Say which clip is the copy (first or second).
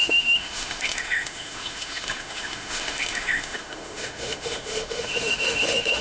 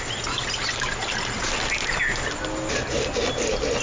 first